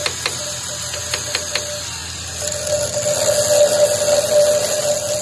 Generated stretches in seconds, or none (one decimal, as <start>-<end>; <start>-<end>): none